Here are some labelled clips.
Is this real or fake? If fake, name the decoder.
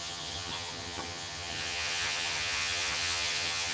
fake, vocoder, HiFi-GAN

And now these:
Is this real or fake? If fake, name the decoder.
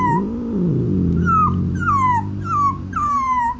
real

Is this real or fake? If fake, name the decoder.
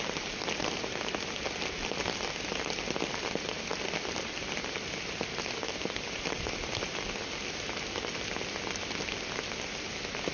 real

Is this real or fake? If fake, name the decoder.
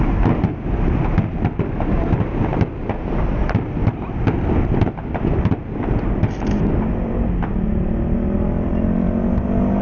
real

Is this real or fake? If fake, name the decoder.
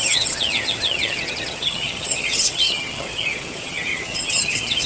fake, vocoder, HiFi-GAN